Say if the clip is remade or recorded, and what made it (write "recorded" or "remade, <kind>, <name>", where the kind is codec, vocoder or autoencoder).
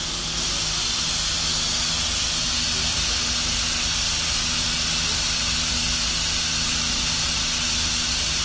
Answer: recorded